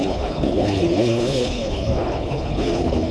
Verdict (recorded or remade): remade